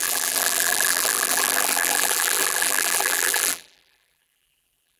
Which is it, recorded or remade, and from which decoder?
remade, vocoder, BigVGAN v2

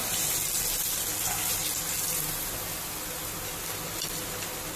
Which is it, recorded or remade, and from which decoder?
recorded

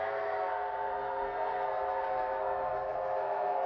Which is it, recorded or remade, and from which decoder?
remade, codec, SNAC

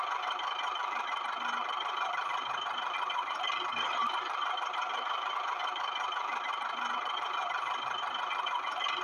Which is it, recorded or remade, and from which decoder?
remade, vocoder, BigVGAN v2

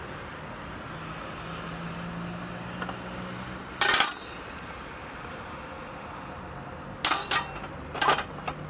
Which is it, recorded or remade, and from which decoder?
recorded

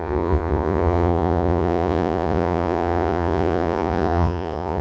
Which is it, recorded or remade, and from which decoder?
remade, vocoder, Vocos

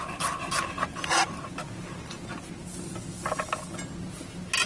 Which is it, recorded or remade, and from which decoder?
recorded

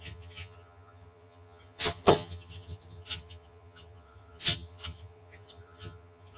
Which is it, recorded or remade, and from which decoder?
remade, vocoder, HiFi-GAN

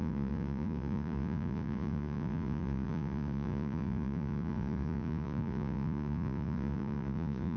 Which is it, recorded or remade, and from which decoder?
remade, vocoder, Vocos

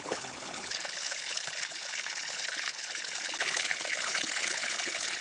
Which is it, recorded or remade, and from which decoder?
remade, codec, HILCodec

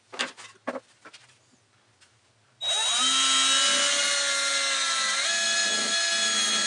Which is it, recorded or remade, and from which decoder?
recorded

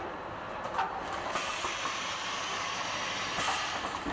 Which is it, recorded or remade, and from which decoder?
remade, vocoder, BigVGAN v2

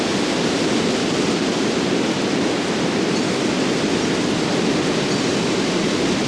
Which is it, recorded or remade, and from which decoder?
recorded